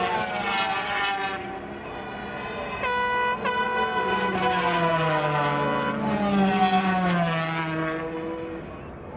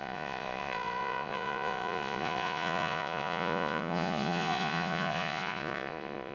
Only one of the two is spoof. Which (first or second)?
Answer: second